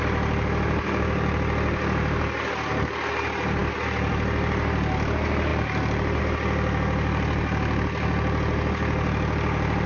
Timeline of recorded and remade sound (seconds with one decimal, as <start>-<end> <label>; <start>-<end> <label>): 0.0-9.9 recorded